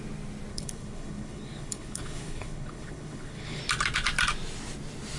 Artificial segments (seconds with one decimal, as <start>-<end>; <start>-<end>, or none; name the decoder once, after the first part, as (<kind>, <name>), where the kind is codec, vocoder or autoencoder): 0.5-3.6 (codec, HILCodec)